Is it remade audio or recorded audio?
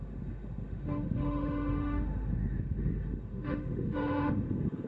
remade